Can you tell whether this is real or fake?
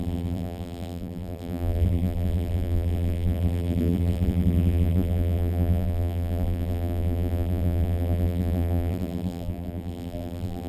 fake